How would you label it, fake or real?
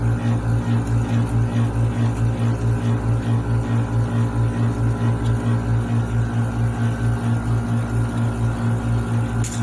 real